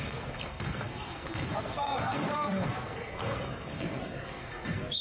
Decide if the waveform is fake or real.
fake